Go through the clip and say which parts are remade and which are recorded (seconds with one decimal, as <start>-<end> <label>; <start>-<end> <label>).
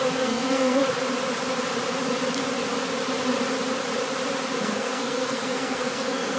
0.0-0.8 remade; 0.8-4.6 recorded; 4.6-6.4 remade